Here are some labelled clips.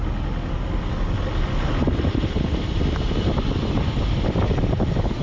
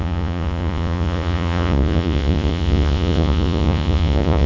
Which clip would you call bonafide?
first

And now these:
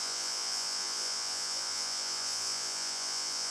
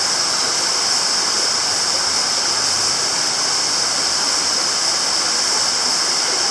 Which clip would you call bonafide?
second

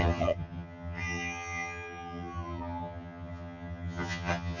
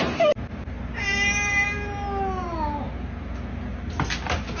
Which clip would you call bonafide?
second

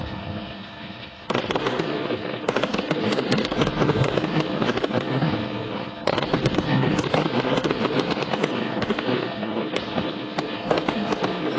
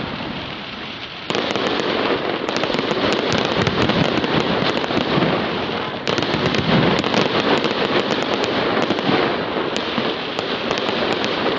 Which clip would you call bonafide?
second